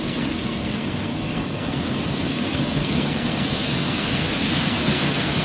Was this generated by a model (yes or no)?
yes